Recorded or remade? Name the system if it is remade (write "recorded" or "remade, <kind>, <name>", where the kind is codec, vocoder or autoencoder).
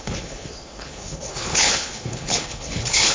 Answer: remade, codec, HILCodec